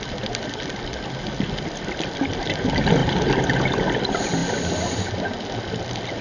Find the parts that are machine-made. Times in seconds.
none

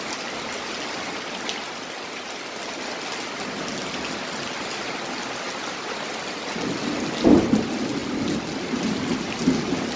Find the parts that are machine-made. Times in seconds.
none